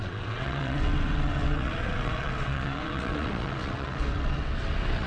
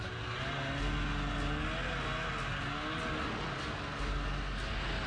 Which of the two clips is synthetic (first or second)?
first